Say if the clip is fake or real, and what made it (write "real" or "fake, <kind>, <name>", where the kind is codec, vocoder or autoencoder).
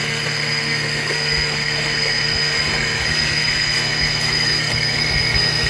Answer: fake, codec, SNAC